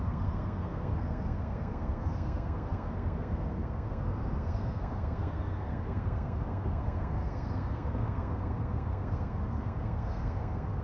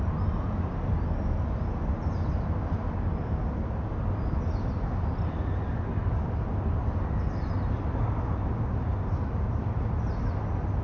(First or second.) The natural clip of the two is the second